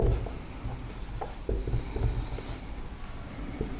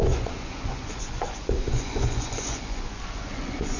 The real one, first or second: first